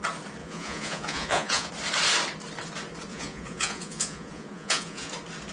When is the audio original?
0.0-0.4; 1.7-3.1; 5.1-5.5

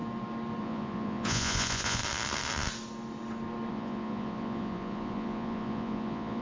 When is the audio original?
0.0-0.6; 2.0-3.7

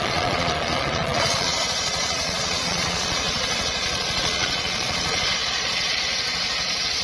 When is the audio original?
none